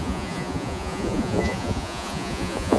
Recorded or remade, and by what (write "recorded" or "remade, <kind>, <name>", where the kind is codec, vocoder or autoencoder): remade, vocoder, Vocos